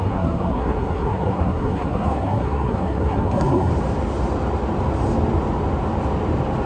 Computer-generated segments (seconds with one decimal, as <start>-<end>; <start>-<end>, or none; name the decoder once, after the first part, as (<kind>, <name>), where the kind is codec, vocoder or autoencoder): 0.0-3.7 (codec, SNAC)